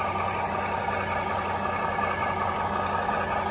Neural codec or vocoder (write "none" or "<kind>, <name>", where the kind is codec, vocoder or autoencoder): none